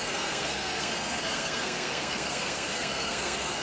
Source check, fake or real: fake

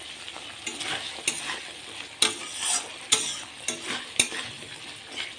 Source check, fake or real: real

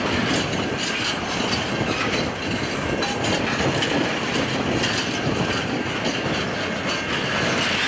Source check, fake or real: real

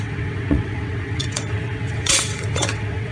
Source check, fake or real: fake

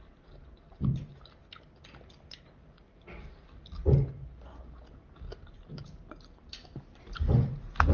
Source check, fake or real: real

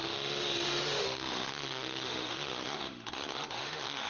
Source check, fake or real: fake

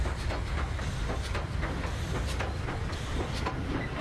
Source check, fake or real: real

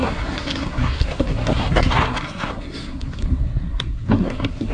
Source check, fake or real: fake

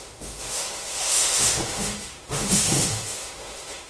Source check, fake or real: fake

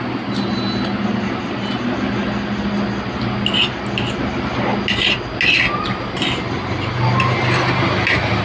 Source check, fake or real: real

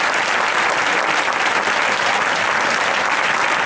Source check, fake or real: real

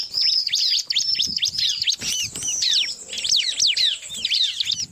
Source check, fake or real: real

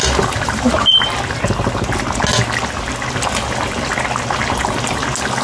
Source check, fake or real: real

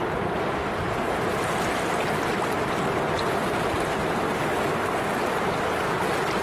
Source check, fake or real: real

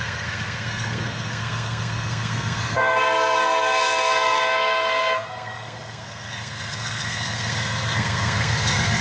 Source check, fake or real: fake